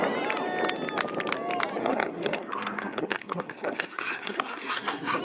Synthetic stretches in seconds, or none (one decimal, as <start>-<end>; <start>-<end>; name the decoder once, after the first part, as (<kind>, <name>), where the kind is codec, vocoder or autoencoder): 1.8-5.2 (codec, SNAC)